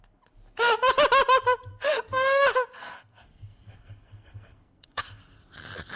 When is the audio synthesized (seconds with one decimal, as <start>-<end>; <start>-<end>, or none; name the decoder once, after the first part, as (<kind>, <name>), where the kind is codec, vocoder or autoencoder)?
1.7-2.4 (codec, SNAC); 2.8-5.4